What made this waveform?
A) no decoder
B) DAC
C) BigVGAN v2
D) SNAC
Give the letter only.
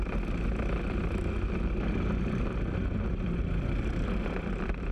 A